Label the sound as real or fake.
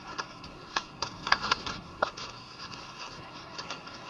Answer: fake